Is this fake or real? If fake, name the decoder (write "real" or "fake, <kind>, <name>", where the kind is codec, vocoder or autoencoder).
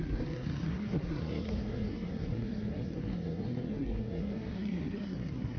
fake, codec, SNAC